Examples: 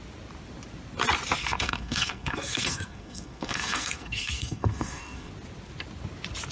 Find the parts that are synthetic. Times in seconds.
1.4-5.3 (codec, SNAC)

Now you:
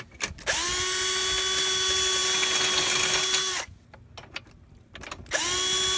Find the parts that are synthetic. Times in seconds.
none